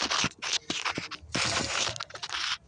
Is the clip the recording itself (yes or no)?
yes